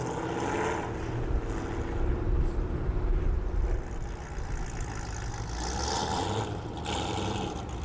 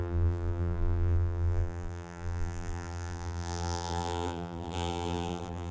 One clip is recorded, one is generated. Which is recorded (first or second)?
first